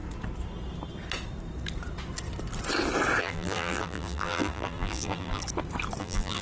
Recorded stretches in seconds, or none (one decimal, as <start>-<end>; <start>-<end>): 0.0-3.2; 5.4-6.0